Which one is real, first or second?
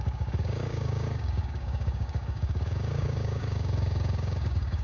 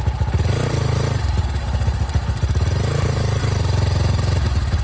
second